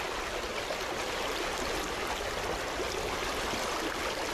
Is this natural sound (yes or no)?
yes